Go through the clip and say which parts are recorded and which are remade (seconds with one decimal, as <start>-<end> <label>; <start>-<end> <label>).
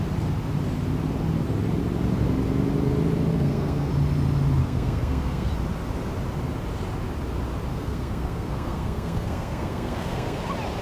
0.0-3.3 recorded; 3.3-3.9 remade; 3.9-4.6 recorded; 4.6-5.5 remade; 5.5-7.7 recorded; 7.7-10.4 remade; 10.4-10.8 recorded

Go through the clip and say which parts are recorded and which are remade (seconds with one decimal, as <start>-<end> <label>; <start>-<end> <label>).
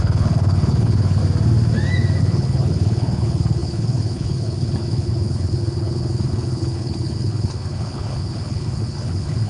0.0-1.2 remade; 1.2-2.2 recorded; 2.2-9.5 remade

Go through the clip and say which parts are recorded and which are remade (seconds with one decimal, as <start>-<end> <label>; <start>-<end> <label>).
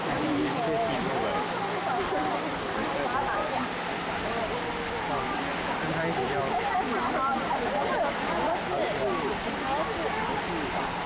0.0-11.1 recorded